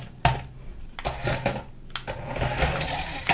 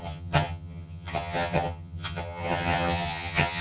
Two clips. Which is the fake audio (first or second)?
second